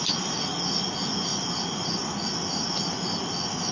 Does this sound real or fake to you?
real